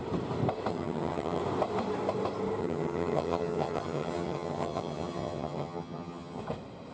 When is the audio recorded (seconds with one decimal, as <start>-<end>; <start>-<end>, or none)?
0.0-0.7; 1.4-2.6; 6.4-6.9